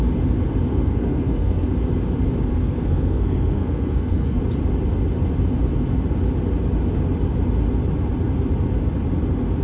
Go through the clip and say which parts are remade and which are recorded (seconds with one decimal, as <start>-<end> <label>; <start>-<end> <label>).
0.0-0.7 recorded; 0.7-1.7 remade; 1.7-2.5 recorded; 2.5-4.4 remade; 4.4-9.6 recorded